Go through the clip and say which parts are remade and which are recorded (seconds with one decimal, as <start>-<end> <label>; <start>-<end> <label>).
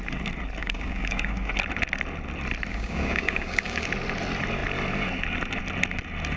0.0-0.6 recorded; 0.6-1.5 remade; 1.5-2.7 recorded; 2.7-3.9 remade; 3.9-6.4 recorded